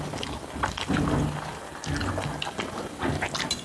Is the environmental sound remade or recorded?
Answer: recorded